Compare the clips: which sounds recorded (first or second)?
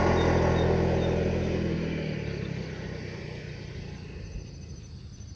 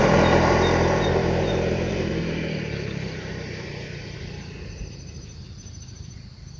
first